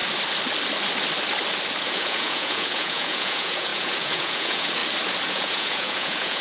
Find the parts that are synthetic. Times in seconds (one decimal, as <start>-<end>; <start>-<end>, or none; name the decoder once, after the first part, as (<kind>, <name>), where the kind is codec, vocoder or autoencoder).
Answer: 1.8-4.8 (vocoder, Vocos); 5.3-6.4